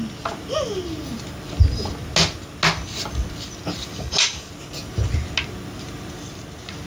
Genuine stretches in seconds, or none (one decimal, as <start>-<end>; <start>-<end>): 0.0-3.9; 4.5-6.9